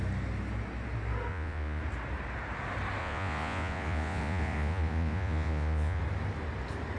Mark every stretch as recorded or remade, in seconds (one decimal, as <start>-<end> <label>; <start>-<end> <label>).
0.0-1.3 recorded; 1.3-1.8 remade; 1.8-3.0 recorded; 3.0-6.0 remade; 6.0-7.0 recorded